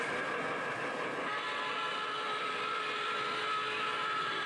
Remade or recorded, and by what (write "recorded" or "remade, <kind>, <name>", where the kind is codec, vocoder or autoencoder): remade, vocoder, BigVGAN v2